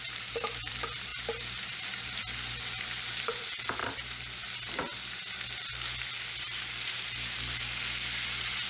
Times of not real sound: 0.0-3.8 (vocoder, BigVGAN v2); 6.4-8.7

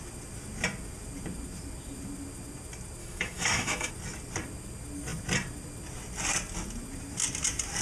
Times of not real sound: 3.0-3.9 (autoencoder, DAC-VAE)

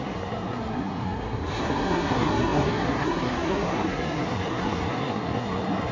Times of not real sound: 0.0-5.9 (codec, SNAC)

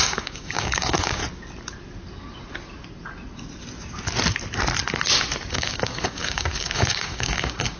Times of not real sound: 0.0-1.2 (codec, DAC); 5.5-7.8

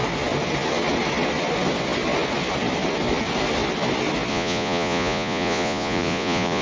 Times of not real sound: 4.3-6.6 (vocoder, Vocos)

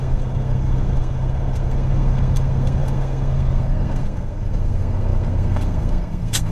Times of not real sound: 0.0-6.5 (codec, SNAC)

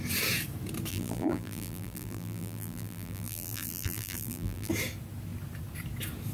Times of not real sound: 0.9-4.7 (vocoder, BigVGAN v2)

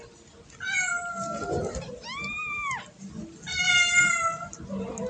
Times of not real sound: none